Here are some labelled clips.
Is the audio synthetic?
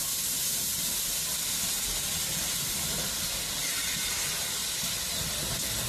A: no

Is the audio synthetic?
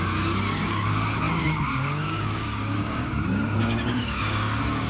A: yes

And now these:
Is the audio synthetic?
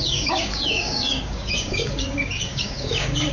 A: yes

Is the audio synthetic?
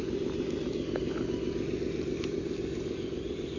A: no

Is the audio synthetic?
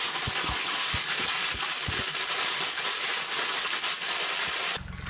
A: no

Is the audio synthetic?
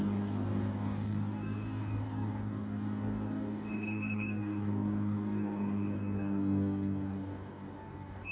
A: yes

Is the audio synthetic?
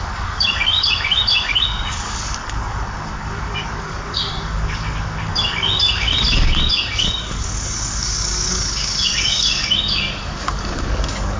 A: yes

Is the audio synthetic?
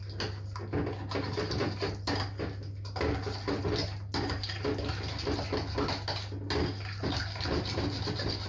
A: no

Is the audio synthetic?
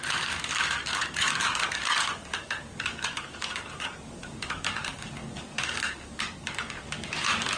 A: yes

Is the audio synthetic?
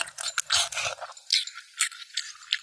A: no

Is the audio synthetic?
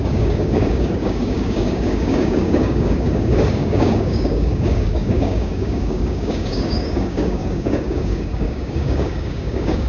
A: yes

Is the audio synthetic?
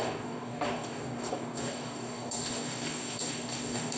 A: yes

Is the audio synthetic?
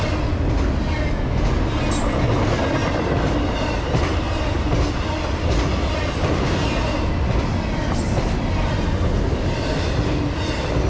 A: no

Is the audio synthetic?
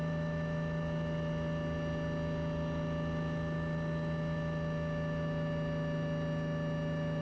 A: no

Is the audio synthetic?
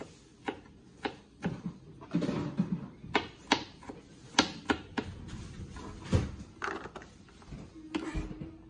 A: no